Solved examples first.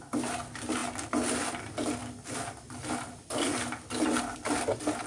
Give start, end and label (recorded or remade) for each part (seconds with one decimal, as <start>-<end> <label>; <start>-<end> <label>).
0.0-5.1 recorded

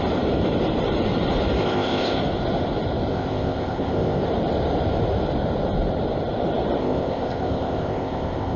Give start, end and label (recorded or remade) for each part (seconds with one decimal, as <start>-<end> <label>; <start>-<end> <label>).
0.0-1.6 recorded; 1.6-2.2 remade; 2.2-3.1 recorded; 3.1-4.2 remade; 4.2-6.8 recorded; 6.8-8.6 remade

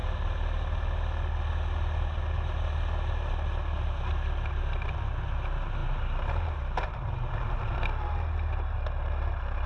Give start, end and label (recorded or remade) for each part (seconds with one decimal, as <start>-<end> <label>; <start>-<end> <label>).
0.0-9.7 recorded